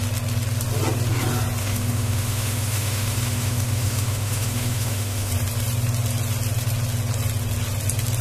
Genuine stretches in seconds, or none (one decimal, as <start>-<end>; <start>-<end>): 0.0-1.6; 5.3-8.2